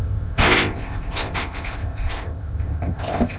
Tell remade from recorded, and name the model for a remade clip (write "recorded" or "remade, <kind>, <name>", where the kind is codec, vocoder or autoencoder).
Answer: remade, codec, ZipCodec